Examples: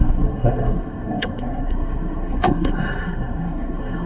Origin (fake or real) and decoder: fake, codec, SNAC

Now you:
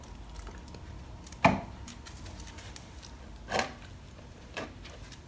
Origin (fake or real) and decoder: real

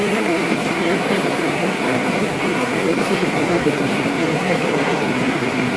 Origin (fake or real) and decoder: fake, codec, SNAC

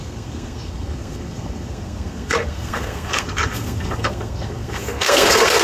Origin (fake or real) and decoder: fake, codec, SNAC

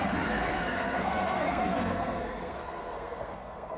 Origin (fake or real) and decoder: fake, codec, SNAC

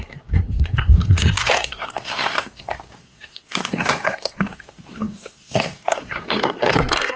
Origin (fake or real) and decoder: fake, codec, SNAC